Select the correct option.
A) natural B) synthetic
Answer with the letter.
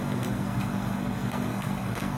B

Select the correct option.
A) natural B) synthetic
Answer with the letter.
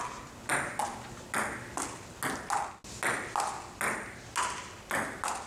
A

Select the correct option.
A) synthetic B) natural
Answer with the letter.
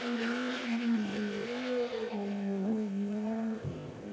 A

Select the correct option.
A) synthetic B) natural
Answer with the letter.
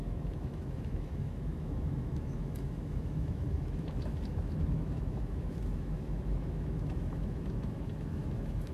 A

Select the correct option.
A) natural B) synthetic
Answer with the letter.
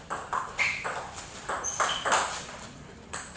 B